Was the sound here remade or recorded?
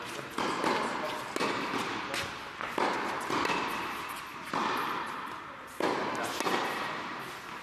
recorded